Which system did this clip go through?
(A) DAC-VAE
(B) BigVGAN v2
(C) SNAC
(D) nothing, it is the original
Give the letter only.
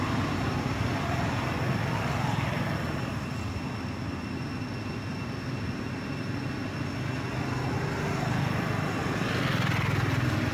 D